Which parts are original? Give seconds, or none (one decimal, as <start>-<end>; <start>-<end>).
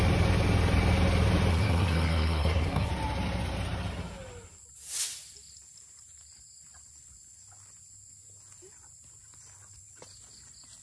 0.0-1.5; 2.9-10.8